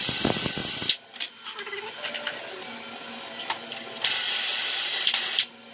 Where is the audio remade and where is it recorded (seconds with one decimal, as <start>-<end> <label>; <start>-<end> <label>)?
0.0-5.7 recorded